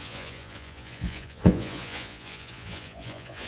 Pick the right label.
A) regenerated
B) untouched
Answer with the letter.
A